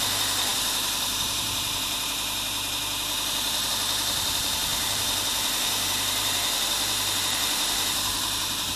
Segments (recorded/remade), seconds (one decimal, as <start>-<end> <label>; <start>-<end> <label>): 0.0-8.8 remade